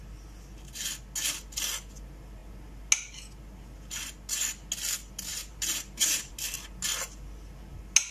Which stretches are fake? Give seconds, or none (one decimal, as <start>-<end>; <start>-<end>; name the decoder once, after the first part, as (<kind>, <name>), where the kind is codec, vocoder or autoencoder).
5.3-6.3 (vocoder, BigVGAN v2)

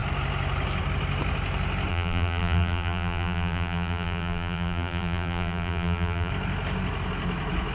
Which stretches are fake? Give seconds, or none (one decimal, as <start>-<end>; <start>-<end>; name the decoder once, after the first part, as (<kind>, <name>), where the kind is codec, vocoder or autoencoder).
1.9-6.3 (vocoder, BigVGAN v2)

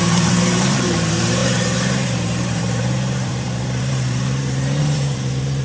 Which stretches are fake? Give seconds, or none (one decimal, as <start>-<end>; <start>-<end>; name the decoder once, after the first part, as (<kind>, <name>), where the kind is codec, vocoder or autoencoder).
0.0-5.6 (vocoder, BigVGAN v2)

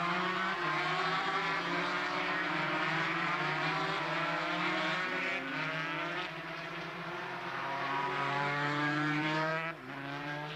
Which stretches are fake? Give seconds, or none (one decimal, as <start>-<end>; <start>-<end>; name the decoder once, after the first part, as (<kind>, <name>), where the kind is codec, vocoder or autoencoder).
0.0-5.3 (vocoder, BigVGAN v2); 6.1-9.5; 10.2-10.6

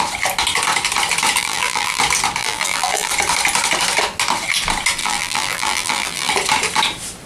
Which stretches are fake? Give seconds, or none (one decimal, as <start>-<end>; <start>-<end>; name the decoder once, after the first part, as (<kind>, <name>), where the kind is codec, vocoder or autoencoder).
1.4-2.0 (vocoder, BigVGAN v2); 2.4-3.1; 5.0-6.3